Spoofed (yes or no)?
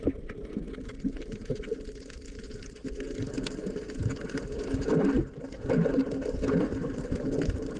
no